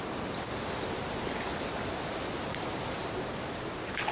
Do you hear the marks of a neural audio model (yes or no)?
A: no